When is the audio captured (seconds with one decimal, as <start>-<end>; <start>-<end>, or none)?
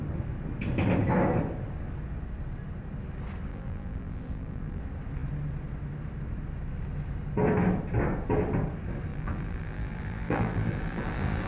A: 0.0-3.5; 4.8-9.1